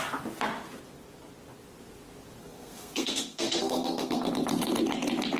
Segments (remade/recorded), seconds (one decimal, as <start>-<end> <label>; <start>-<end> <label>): 0.0-2.4 recorded; 2.4-4.3 remade; 4.3-5.4 recorded

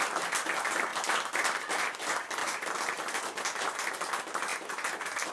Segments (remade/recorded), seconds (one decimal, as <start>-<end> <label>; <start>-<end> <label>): 0.0-5.3 recorded

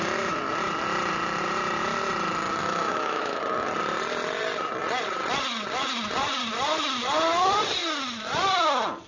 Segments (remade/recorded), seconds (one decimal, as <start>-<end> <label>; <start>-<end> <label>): 0.0-2.6 recorded; 2.6-3.4 remade; 3.4-9.1 recorded

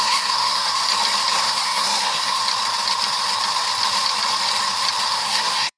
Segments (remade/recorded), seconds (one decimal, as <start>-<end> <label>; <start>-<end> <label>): 0.0-0.8 remade; 0.8-1.3 recorded; 1.3-2.4 remade; 2.4-5.1 recorded; 5.1-5.8 remade